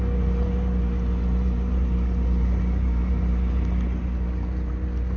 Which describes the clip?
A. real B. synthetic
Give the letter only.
A